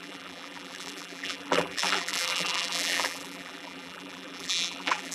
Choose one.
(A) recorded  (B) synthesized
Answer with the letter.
B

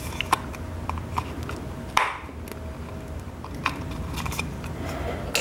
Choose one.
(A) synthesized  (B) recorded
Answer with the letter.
B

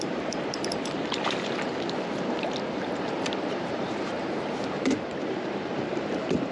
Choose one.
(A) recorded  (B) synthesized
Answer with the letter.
B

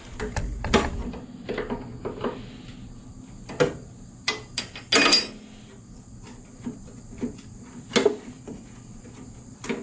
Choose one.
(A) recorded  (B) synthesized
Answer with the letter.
A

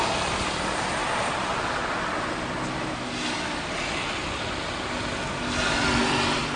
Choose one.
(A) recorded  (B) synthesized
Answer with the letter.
A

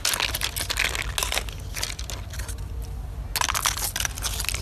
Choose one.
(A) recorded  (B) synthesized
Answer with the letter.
A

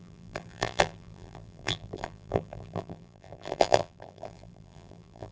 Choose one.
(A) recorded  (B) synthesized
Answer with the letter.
B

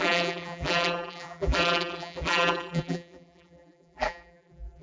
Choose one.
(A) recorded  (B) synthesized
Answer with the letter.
B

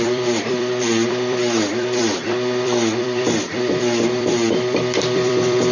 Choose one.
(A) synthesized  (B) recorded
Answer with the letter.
A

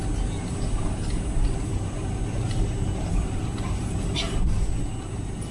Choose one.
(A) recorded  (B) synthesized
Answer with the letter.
A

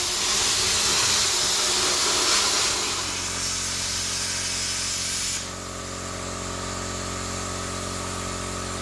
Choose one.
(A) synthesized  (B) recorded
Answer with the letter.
B